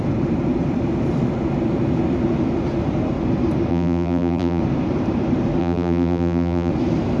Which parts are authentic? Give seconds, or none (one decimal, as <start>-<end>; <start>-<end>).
0.0-3.7; 4.6-5.6; 6.7-7.2